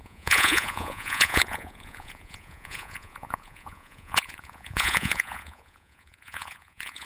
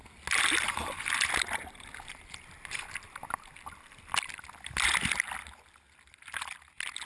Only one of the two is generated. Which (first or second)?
first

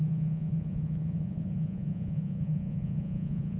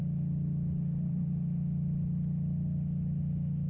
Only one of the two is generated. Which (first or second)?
first